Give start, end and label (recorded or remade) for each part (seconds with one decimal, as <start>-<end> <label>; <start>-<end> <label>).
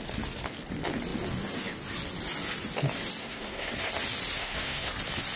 0.0-3.2 recorded; 3.2-3.9 remade; 3.9-4.4 recorded; 4.4-4.9 remade; 4.9-5.4 recorded